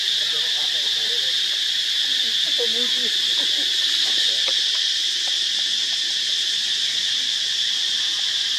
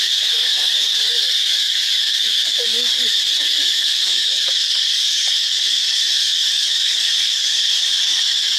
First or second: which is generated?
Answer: second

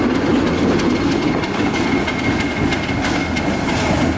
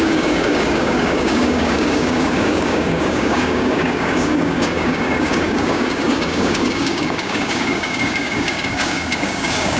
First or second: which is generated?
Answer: second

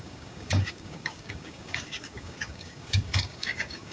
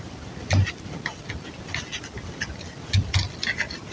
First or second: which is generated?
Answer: first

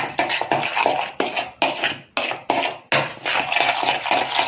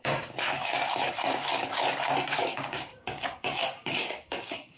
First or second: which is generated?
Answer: second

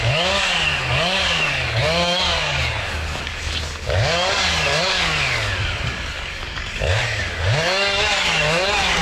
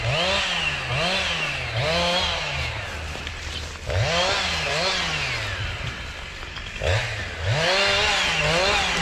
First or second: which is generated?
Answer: first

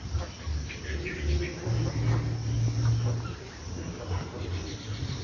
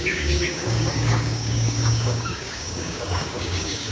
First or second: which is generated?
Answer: second